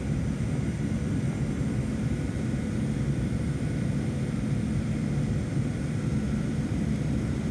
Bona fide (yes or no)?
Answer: yes